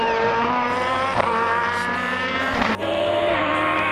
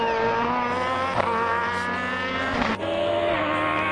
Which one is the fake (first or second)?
first